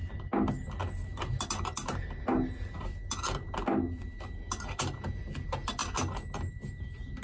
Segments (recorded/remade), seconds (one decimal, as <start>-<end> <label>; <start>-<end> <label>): 0.0-7.2 recorded